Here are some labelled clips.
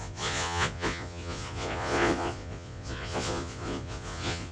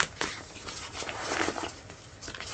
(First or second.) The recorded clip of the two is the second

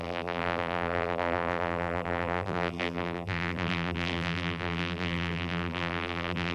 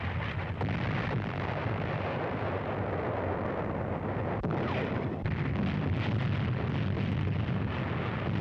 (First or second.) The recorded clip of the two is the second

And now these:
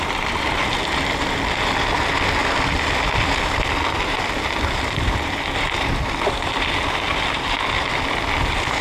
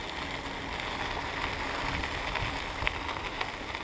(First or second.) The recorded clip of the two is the second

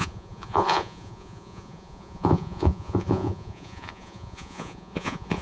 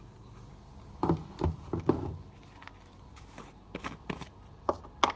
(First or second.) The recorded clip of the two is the second